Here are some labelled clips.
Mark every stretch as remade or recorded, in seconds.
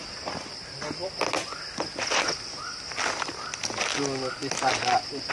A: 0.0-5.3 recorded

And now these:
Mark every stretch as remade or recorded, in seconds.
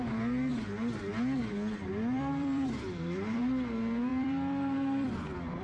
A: 0.0-1.8 recorded; 1.8-3.4 remade; 3.4-4.1 recorded; 4.1-5.6 remade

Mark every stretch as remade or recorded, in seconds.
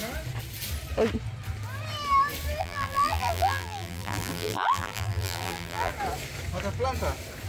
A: 0.0-2.6 recorded; 2.6-5.9 remade; 5.9-7.5 recorded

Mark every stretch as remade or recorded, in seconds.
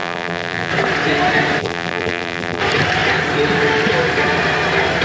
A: 0.0-0.7 remade; 0.7-1.6 recorded; 1.6-2.6 remade; 2.6-5.0 recorded